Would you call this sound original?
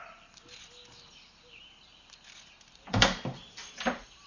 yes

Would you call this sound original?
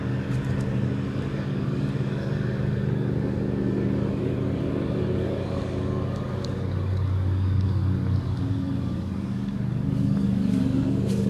no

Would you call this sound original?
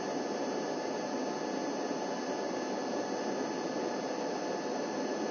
yes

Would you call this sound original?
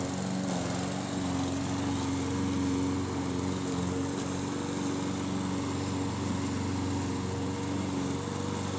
yes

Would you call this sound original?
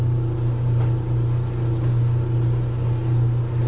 yes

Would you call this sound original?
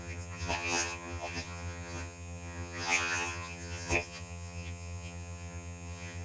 no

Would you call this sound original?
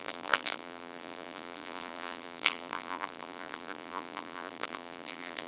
no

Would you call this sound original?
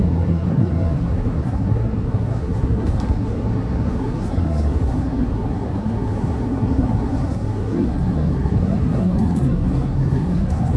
no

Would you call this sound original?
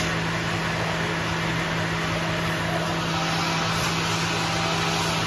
yes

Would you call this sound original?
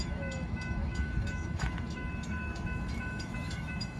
no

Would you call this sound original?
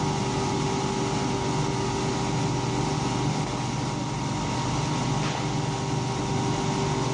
yes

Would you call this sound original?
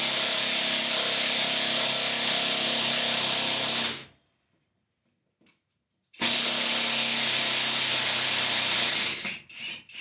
yes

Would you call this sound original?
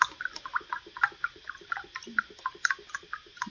yes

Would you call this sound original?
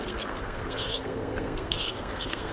no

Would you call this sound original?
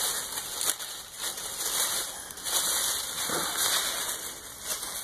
yes